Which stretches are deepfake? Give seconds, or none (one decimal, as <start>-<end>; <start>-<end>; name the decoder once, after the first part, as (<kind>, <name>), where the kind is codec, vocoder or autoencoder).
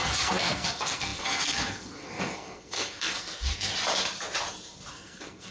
0.0-3.7 (codec, SNAC); 4.9-5.5